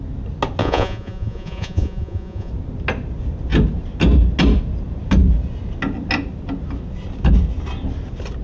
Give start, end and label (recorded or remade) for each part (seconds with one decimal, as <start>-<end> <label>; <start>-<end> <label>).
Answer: 0.0-0.6 recorded; 0.6-2.5 remade; 2.5-8.4 recorded